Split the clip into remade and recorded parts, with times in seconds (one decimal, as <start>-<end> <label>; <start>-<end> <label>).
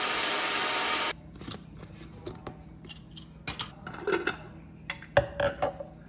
0.0-6.1 recorded